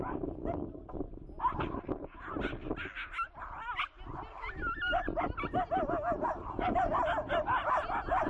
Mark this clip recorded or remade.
recorded